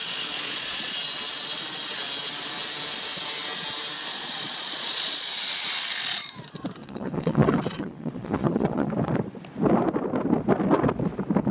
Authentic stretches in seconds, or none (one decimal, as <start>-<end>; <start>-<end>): 0.9-4.1; 5.3-6.8; 8.9-11.5